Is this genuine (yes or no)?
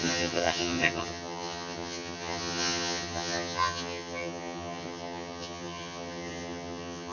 no